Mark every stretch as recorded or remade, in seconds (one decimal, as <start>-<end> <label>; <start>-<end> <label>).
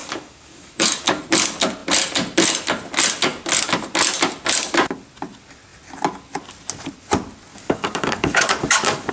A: 0.0-1.2 remade; 1.2-7.5 recorded; 7.5-9.1 remade